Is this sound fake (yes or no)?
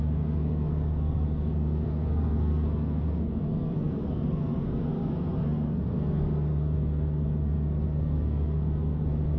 yes